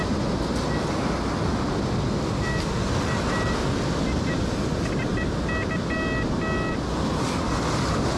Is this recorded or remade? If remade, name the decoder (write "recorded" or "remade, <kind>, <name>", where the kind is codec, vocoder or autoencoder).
recorded